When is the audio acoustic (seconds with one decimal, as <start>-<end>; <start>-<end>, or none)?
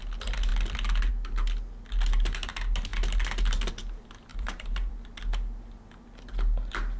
0.0-4.3; 4.9-7.0